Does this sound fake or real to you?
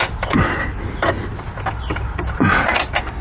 fake